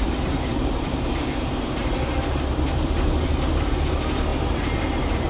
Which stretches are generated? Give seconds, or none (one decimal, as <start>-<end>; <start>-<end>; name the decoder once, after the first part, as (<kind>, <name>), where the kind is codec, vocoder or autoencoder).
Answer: 0.0-5.3 (vocoder, BigVGAN v2)